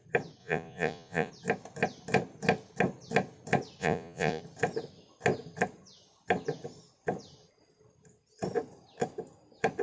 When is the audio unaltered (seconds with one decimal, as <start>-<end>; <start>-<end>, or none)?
0.0-0.4; 1.3-3.8; 4.4-9.8